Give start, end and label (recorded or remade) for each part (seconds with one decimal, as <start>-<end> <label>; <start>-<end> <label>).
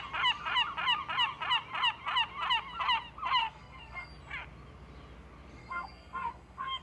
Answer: 0.0-3.4 recorded; 3.4-4.1 remade; 4.1-5.6 recorded; 5.6-6.8 remade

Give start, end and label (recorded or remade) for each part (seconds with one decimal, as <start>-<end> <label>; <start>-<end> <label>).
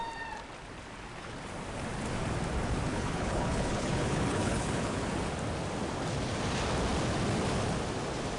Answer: 0.0-2.9 recorded; 2.9-5.0 remade; 5.0-8.4 recorded